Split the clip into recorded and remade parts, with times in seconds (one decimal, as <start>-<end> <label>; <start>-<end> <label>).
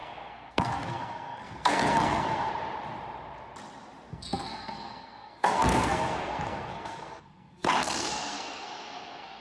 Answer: 0.0-2.5 remade; 2.5-4.1 recorded; 4.1-9.4 remade